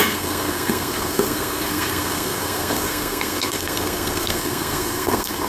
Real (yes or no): no